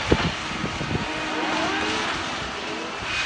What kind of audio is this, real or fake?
real